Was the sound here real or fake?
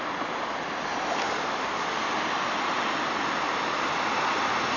real